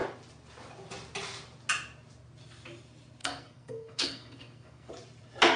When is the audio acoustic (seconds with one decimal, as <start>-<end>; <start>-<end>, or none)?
0.0-3.2; 4.9-5.6